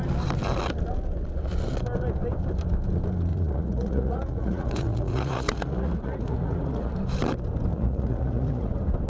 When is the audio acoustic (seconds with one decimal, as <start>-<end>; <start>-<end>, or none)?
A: 0.0-3.3; 6.9-7.7; 8.7-9.1